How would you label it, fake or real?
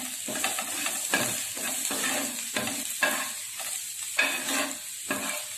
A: real